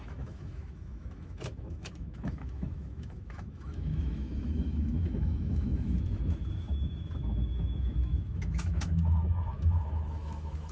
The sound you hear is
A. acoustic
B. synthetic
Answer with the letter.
B